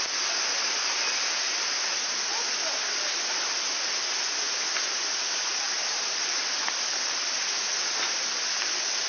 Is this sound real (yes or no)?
yes